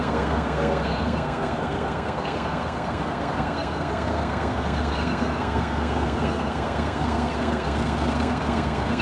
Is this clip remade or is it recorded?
remade